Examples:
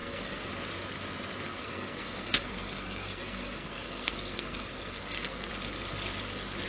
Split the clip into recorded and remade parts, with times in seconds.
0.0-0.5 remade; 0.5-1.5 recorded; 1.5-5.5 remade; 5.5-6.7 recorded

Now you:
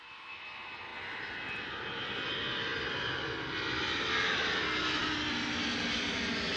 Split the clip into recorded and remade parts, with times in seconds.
0.0-6.6 recorded

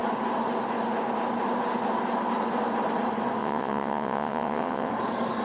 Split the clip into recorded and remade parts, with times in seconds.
0.0-3.4 recorded; 3.4-4.9 remade; 4.9-5.4 recorded

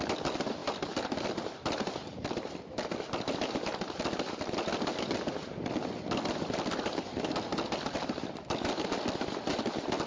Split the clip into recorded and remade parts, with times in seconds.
0.0-10.1 remade